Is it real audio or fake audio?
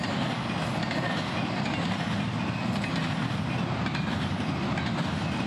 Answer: real